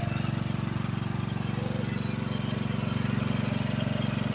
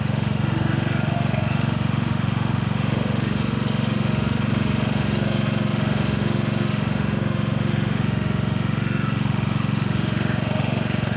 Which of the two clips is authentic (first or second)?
first